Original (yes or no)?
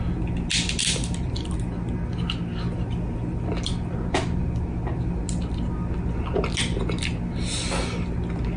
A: yes